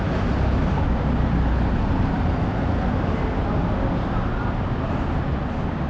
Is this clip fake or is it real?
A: real